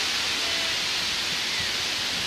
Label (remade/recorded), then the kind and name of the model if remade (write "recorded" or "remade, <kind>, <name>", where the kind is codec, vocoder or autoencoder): recorded